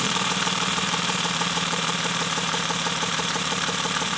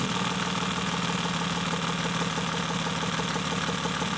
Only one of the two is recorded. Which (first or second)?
second